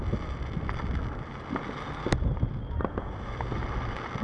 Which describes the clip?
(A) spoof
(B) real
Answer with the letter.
B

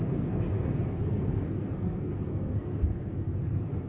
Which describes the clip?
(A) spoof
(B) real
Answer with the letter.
A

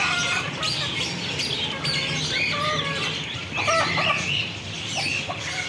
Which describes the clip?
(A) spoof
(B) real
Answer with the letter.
B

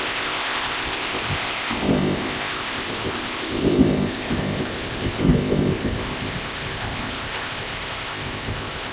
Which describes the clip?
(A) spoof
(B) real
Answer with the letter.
A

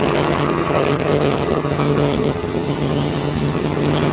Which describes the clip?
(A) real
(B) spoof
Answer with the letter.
B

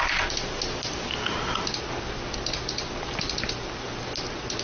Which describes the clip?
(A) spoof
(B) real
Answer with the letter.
B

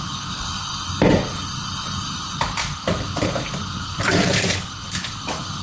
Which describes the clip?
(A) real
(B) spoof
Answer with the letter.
B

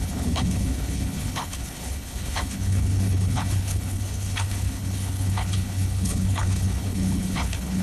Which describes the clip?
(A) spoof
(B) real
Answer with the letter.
A